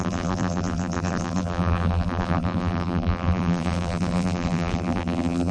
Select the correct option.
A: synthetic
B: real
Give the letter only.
A